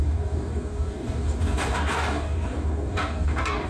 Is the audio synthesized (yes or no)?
yes